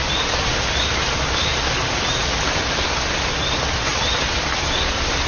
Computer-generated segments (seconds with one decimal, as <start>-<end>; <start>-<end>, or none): none